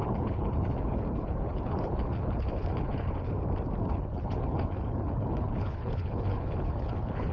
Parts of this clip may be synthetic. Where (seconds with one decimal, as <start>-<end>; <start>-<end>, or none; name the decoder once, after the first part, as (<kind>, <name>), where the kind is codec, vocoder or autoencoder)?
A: 0.0-3.4 (codec, HILCodec); 3.9-7.3